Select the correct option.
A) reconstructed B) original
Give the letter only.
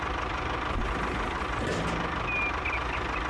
B